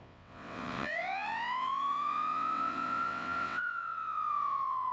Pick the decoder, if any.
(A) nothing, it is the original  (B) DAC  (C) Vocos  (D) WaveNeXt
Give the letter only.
D